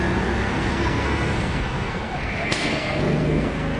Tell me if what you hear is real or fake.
fake